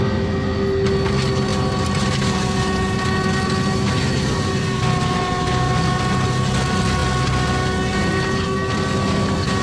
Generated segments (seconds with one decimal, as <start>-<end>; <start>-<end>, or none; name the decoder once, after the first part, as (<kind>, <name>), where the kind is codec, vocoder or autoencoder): none